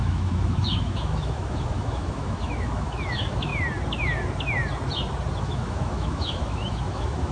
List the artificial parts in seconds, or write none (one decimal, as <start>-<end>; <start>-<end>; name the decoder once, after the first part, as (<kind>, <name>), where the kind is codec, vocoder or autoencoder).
0.0-3.5 (autoencoder, DAC-VAE); 5.4-7.3